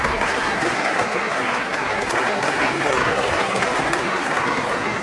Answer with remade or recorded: remade